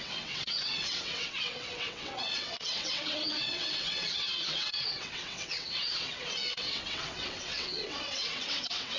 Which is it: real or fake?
fake